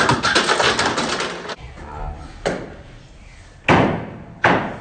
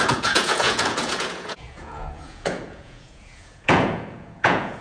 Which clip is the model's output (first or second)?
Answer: second